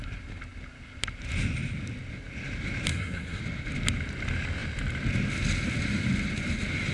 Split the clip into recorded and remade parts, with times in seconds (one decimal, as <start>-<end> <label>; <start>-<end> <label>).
0.0-2.9 recorded; 2.9-3.4 remade; 3.4-6.9 recorded